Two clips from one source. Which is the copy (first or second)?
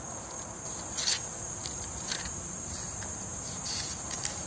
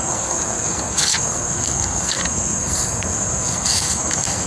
second